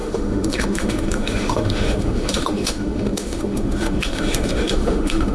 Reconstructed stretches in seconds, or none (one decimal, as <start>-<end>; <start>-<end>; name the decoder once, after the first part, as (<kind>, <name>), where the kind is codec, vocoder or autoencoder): 0.0-5.3 (autoencoder, DAC-VAE)